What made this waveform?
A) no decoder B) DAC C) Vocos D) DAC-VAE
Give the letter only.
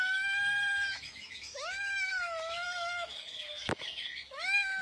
D